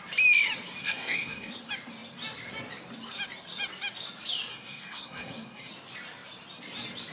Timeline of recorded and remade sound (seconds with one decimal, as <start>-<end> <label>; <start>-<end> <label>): 0.0-0.8 recorded; 0.8-1.5 remade; 1.5-4.5 recorded; 4.5-5.7 remade; 5.7-7.1 recorded